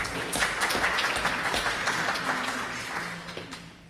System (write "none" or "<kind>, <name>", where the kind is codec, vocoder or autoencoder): none